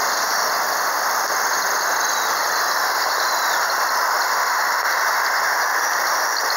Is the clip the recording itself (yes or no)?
yes